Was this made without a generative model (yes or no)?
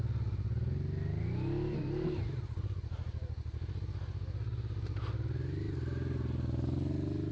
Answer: yes